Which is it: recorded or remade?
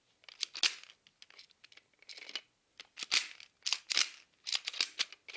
recorded